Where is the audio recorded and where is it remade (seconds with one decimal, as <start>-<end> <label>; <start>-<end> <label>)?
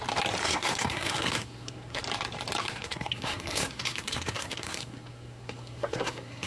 0.0-0.4 recorded; 0.4-2.0 remade; 2.0-2.6 recorded; 2.6-6.5 remade